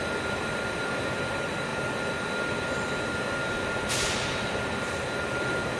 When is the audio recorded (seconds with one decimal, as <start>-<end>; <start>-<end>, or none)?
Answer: 0.0-5.8